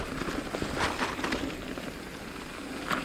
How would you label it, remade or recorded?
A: recorded